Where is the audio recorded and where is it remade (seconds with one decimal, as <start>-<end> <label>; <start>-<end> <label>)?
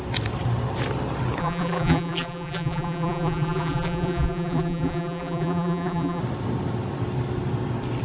0.0-1.4 recorded; 1.4-6.2 remade; 6.2-8.0 recorded